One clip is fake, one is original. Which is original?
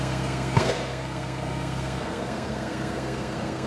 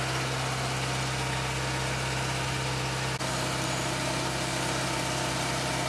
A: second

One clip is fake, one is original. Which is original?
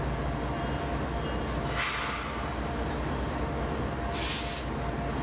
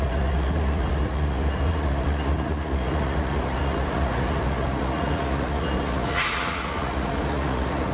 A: first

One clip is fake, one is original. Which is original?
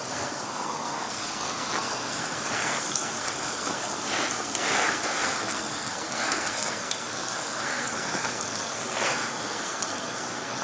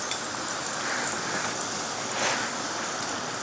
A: second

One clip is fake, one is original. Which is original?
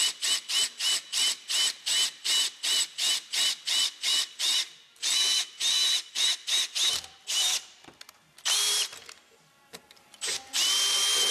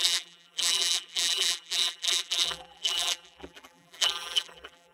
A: first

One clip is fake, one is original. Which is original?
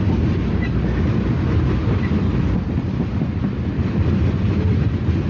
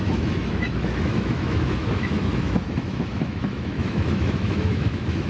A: first